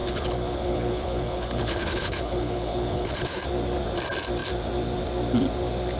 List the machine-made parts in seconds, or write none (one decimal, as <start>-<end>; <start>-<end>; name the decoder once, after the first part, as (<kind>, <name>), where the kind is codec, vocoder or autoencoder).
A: 0.0-3.4 (codec, HILCodec)